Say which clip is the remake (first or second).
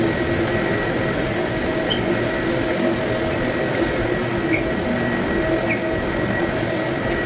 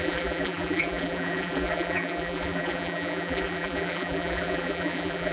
second